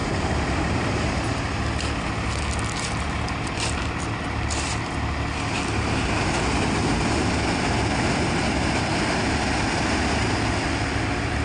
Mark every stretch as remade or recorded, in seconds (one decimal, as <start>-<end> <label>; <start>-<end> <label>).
0.0-1.1 remade; 1.1-11.4 recorded